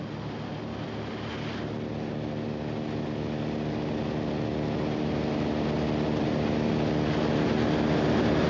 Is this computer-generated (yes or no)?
no